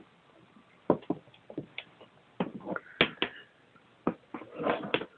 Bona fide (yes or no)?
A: yes